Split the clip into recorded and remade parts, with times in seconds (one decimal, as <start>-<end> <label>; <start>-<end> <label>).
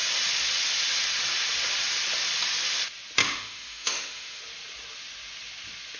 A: 0.0-3.2 recorded; 3.2-4.4 remade; 4.4-6.0 recorded